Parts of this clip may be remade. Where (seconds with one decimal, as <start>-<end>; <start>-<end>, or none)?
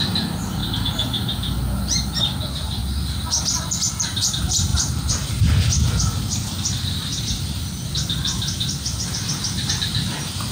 0.0-0.6; 2.2-10.5